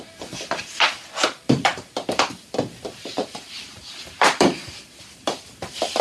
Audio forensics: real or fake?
fake